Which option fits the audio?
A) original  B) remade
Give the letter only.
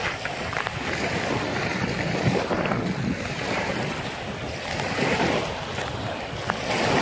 A